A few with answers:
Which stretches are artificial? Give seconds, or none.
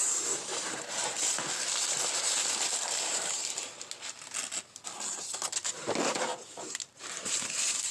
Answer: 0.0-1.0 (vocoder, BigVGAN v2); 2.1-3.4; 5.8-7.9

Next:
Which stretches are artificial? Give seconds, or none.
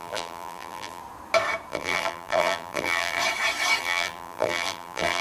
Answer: 0.0-1.0 (vocoder, BigVGAN v2); 1.7-3.2; 3.8-5.2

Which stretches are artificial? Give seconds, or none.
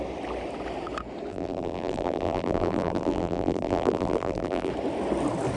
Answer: 1.3-4.7 (vocoder, BigVGAN v2)